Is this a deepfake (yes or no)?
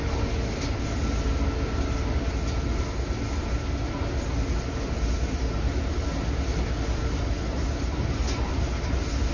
no